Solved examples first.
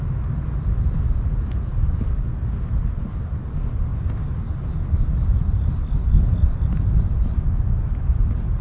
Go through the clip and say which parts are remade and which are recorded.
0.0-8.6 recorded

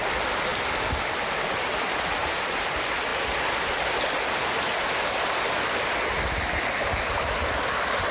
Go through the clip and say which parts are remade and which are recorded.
0.0-8.1 recorded

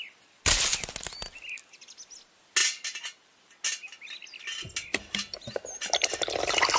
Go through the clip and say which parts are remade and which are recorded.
0.0-6.8 recorded